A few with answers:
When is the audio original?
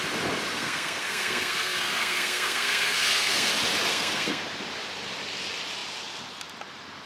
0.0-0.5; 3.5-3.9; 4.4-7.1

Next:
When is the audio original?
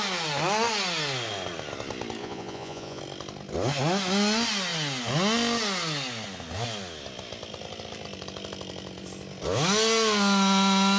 0.0-2.2; 3.0-11.0